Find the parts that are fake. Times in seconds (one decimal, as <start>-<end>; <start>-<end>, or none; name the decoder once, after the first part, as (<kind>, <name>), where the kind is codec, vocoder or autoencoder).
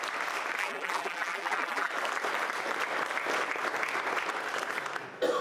0.6-1.9 (vocoder, BigVGAN v2)